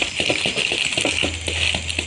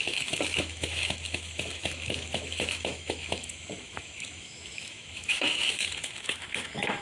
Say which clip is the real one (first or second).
first